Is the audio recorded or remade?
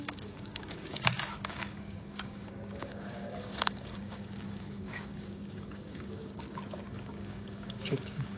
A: remade